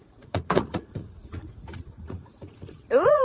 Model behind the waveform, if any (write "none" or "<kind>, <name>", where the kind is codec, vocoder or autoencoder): vocoder, Vocos